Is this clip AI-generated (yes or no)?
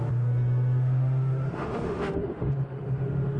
yes